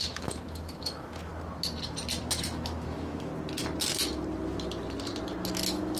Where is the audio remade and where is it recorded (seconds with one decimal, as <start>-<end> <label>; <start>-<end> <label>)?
0.0-1.3 remade; 1.3-2.2 recorded; 2.2-3.3 remade; 3.3-5.5 recorded; 5.5-6.0 remade